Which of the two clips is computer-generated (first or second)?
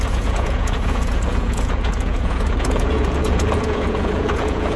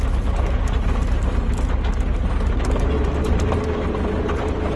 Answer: first